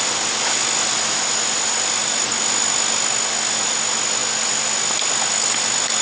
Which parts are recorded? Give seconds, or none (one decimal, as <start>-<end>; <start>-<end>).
0.0-6.0